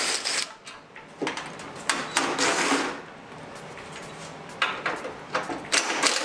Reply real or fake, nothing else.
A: fake